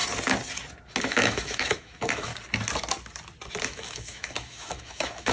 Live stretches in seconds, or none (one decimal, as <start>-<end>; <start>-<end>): 0.0-1.0; 2.3-3.6